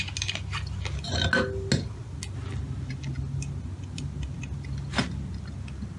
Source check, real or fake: real